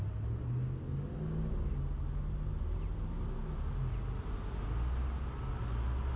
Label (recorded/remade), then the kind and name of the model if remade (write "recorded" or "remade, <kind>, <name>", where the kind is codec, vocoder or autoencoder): recorded